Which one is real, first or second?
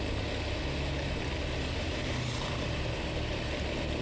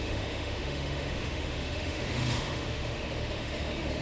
first